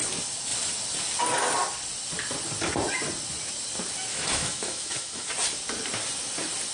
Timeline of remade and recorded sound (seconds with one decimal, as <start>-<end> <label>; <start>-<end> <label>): 0.0-4.1 recorded; 4.1-5.3 remade; 5.3-6.7 recorded